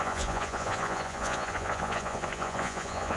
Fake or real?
fake